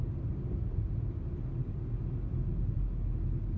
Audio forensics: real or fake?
real